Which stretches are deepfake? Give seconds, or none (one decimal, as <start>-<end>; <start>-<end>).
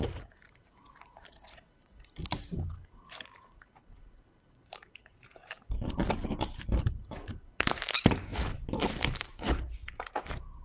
0.0-6.0; 6.8-10.6